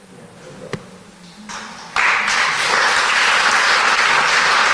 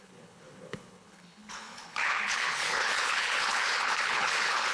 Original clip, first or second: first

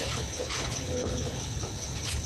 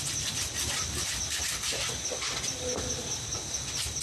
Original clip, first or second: second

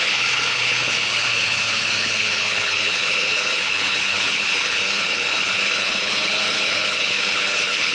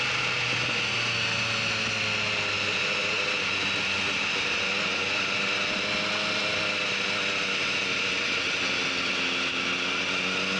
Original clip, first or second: second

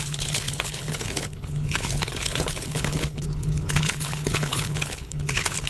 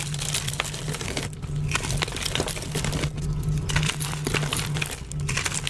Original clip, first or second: second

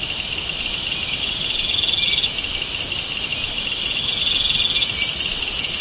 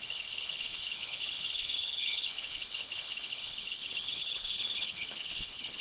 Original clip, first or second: first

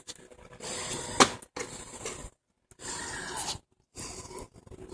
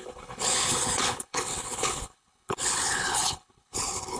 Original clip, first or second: first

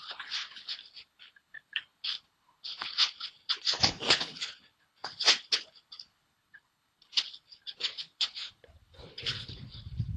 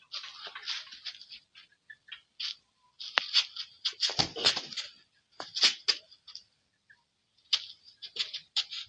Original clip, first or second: second